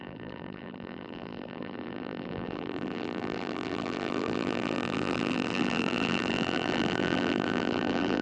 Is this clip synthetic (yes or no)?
yes